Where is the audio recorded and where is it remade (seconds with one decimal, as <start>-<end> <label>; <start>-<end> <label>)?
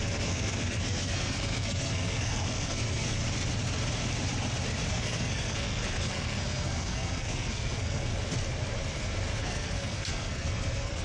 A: 0.0-3.2 remade; 3.2-4.9 recorded; 4.9-8.1 remade; 8.1-9.4 recorded; 9.4-11.0 remade